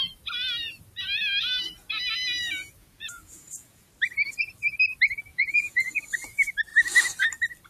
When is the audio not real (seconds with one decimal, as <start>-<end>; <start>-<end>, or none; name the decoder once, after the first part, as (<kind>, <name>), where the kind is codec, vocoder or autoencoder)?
2.8-3.9 (vocoder, Vocos); 5.3-6.0